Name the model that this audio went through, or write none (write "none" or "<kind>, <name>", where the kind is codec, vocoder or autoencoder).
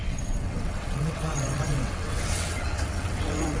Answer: vocoder, WaveNeXt